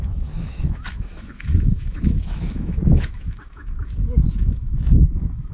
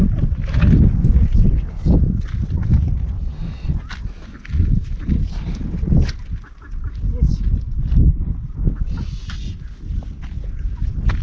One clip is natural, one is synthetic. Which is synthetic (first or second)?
first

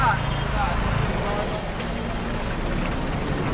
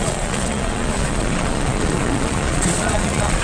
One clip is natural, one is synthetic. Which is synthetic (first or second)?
second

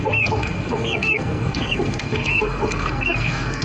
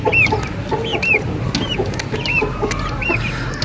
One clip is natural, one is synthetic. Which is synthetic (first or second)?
first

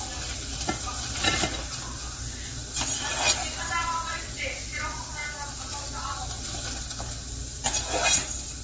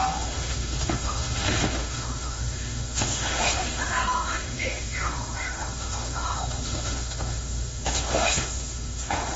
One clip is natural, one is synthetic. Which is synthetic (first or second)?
second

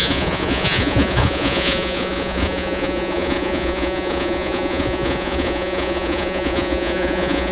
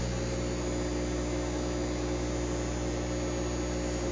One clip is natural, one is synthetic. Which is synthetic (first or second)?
first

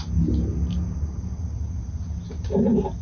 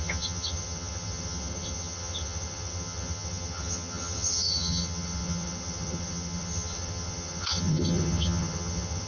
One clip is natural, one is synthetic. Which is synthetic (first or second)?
second